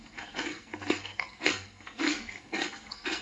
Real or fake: fake